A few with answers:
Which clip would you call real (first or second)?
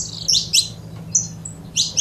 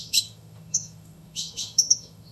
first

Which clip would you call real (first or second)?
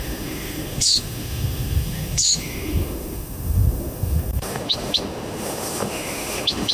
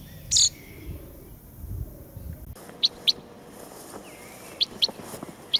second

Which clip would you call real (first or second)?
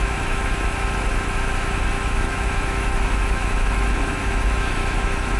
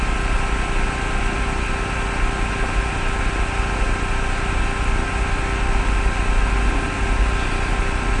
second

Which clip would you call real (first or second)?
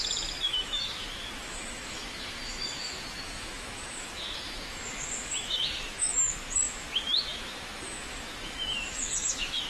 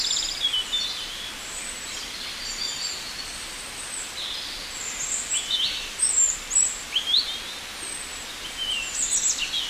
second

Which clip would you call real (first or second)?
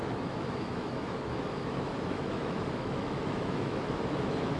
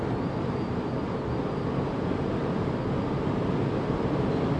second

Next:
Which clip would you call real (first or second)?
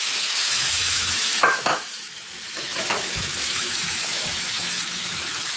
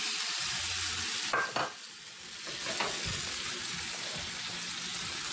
second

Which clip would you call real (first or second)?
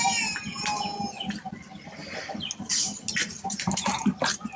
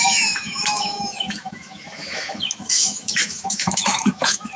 first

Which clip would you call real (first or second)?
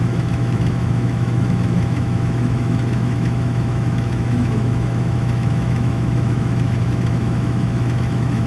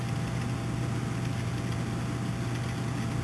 second